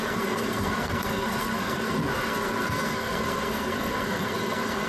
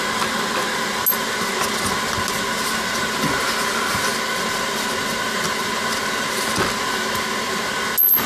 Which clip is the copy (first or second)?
first